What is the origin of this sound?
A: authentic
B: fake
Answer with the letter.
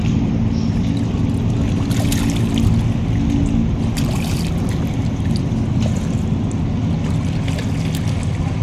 A